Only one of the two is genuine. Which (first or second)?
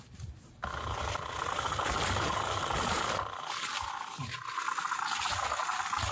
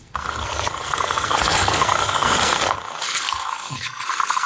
first